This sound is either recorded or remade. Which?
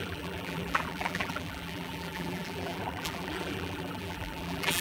remade